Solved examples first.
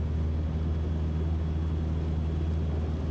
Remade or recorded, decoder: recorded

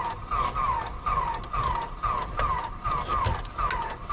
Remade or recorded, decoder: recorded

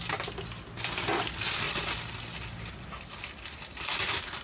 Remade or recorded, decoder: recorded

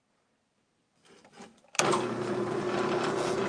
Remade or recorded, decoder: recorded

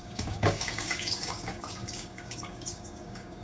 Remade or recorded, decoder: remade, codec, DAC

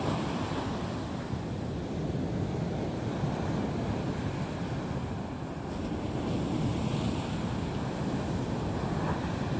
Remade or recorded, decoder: recorded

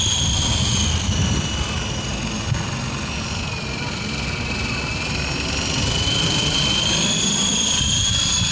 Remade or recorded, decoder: recorded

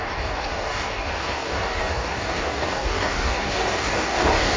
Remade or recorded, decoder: remade, codec, DAC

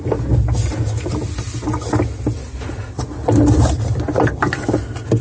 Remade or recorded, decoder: recorded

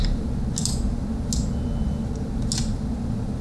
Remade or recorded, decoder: recorded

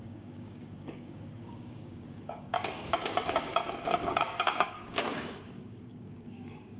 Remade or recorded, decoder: remade, codec, DAC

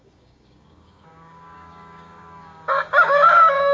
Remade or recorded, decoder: remade, codec, DAC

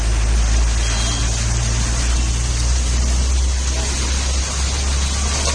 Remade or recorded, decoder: recorded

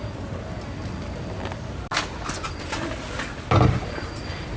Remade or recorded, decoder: recorded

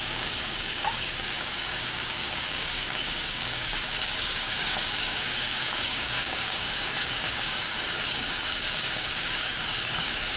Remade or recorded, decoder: remade, codec, DAC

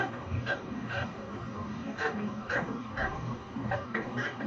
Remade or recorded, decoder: remade, codec, DAC